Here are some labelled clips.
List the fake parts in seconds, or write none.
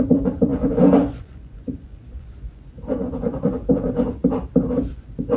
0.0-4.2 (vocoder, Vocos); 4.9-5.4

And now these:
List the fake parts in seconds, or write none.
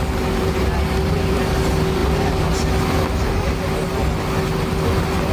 none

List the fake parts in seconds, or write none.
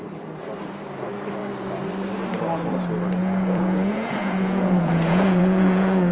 3.2-6.1 (vocoder, Vocos)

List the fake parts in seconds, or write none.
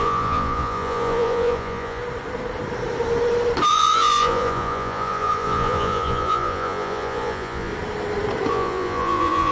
0.0-2.0 (vocoder, Vocos); 3.7-7.7; 8.5-9.5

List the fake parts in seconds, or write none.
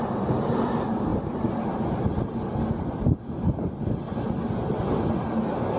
none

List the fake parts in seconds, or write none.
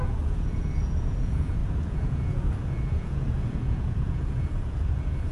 0.0-5.3 (vocoder, Vocos)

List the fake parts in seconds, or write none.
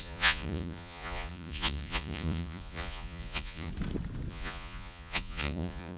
0.0-3.7 (vocoder, Vocos); 4.3-6.0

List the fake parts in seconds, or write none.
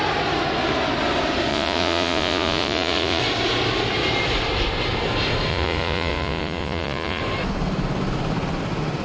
1.5-3.2 (vocoder, Vocos); 5.5-7.2